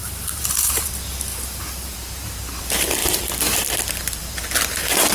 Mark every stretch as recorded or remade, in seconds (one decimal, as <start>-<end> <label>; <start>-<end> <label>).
0.0-0.9 remade; 0.9-1.3 recorded; 1.3-2.6 remade; 2.6-3.0 recorded; 3.0-3.7 remade; 3.7-5.1 recorded